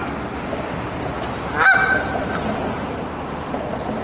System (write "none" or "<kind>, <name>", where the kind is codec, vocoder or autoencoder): none